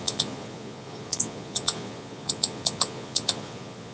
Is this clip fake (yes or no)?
yes